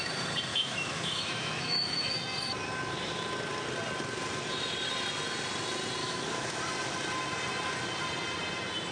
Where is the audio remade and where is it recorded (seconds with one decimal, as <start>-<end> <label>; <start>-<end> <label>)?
0.0-0.5 recorded; 0.5-2.1 remade; 2.1-6.0 recorded; 6.0-6.6 remade; 6.6-8.9 recorded